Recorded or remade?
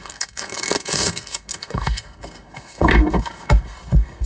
remade